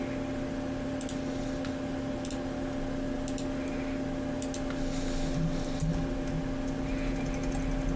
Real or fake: real